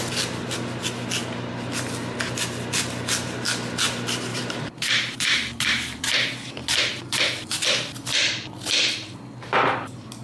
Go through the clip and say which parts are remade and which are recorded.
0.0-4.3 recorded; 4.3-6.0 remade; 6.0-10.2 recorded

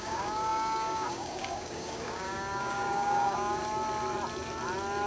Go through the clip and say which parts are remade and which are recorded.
0.0-3.6 remade; 3.6-5.1 recorded